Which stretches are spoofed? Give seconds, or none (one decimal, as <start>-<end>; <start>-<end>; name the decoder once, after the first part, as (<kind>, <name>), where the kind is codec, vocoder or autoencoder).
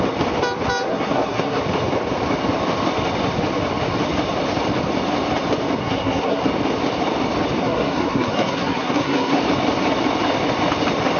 0.9-1.6 (codec, SNAC); 5.8-6.4; 7.6-9.4